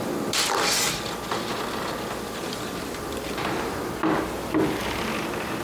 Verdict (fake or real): fake